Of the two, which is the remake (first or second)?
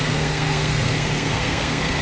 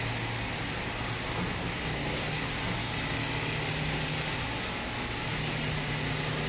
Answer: first